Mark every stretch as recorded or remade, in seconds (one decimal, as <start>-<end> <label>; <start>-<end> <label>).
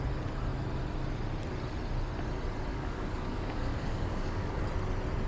0.0-2.7 recorded; 2.7-4.6 remade; 4.6-5.3 recorded